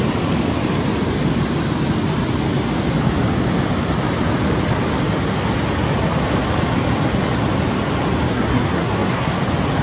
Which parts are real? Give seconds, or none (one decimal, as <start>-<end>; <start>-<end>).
0.0-8.3; 9.4-9.8